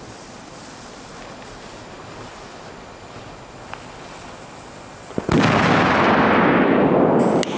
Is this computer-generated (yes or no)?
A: no